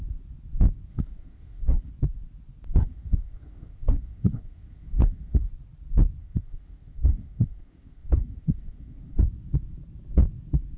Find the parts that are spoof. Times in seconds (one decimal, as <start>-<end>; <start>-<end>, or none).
0.9-1.9; 2.8-5.5; 6.2-9.2